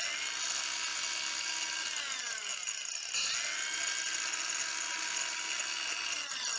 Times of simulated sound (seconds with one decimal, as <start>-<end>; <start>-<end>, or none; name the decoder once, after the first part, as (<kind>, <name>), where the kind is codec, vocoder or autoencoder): none